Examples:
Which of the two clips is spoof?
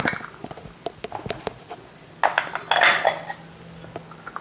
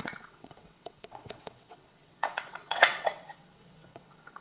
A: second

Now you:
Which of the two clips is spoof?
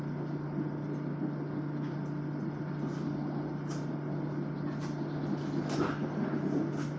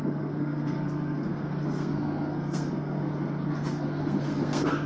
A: second